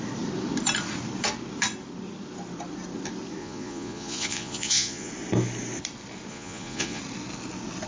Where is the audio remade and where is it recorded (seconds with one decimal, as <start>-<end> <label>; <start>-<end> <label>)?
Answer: 0.0-3.4 recorded; 3.4-5.1 remade; 5.1-6.3 recorded; 6.3-7.0 remade; 7.0-7.9 recorded